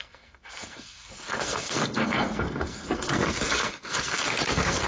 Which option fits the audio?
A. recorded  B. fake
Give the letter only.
B